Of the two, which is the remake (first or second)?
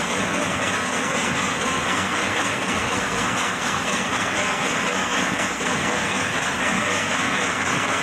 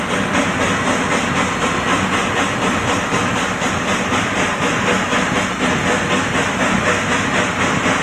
first